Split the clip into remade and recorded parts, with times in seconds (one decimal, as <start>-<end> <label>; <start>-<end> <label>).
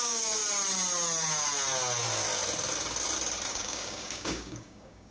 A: 0.0-0.4 remade; 0.4-3.5 recorded; 3.5-5.1 remade